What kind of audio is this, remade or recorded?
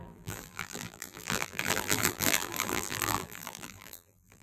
remade